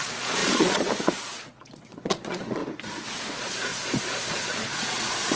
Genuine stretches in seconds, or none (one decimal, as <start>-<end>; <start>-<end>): 2.6-3.3